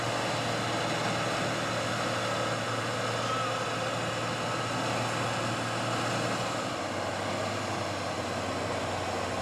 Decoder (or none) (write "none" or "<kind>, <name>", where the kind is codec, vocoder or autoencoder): none